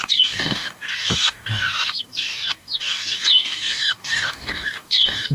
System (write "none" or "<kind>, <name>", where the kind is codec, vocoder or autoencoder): codec, DAC